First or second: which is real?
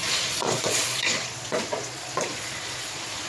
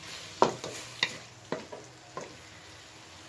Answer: second